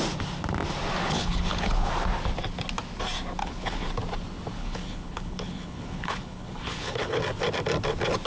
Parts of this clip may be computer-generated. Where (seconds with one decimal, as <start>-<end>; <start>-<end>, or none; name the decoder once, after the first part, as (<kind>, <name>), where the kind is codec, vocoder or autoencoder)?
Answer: 1.0-1.9 (codec, HILCodec); 3.4-3.9; 4.6-7.2